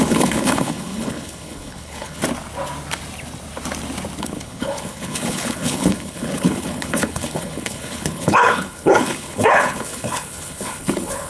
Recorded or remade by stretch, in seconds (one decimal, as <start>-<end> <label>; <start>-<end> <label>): 0.0-2.2 remade; 2.2-4.2 recorded; 4.2-11.3 remade